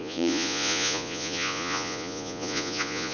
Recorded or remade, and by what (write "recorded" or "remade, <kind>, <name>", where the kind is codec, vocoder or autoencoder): remade, vocoder, Vocos